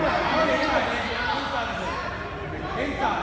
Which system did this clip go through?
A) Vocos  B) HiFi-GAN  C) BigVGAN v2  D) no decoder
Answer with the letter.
D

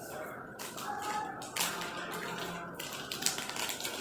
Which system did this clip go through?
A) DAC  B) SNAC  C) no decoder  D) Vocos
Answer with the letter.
C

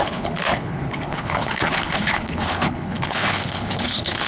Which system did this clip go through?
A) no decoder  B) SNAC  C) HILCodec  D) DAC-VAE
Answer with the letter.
C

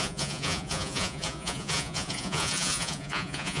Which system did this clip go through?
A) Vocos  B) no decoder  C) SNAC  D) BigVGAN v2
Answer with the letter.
A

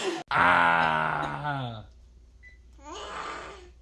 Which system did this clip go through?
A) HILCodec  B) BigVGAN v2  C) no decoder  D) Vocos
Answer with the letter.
C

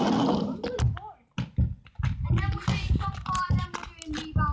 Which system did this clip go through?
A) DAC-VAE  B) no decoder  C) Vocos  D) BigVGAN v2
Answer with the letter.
B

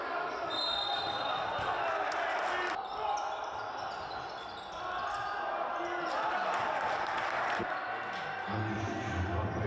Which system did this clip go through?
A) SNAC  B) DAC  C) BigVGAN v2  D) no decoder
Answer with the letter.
D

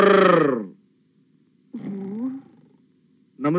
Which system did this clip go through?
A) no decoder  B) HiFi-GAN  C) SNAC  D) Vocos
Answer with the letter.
A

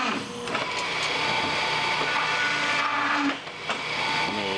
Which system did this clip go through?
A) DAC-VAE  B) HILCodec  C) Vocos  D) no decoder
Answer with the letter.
D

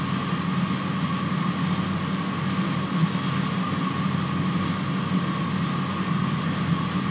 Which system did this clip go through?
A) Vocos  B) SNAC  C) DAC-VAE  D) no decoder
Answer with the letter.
D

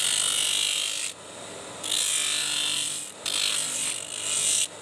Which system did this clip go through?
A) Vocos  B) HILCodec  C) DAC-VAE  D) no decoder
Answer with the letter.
D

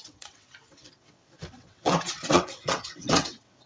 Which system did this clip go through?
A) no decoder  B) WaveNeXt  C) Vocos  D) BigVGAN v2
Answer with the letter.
B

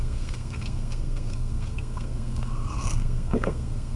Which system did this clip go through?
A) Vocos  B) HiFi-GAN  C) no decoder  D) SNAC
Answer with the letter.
D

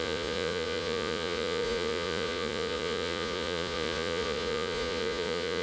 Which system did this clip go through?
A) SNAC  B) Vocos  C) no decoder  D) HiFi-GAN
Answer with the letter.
B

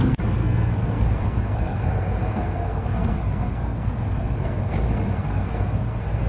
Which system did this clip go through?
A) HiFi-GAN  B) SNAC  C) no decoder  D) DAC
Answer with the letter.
B